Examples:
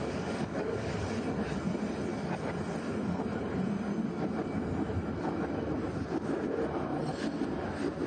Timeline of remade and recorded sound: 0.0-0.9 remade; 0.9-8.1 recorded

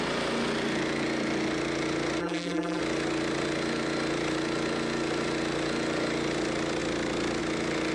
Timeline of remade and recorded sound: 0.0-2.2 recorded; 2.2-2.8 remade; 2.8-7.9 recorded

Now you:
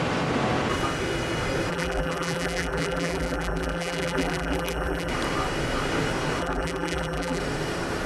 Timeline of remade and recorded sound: 0.0-1.7 recorded; 1.7-5.1 remade; 5.1-6.4 recorded; 6.4-7.4 remade; 7.4-8.1 recorded

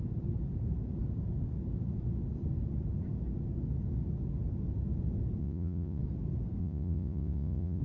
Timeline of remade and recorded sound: 0.0-5.4 recorded; 5.4-6.0 remade; 6.0-6.6 recorded; 6.6-7.8 remade